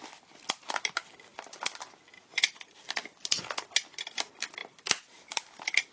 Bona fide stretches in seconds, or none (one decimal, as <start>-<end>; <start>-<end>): 0.0-5.9